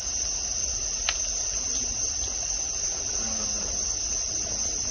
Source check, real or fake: real